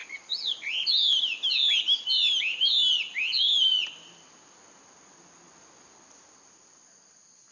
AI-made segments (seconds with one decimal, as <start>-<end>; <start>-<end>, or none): 0.0-0.7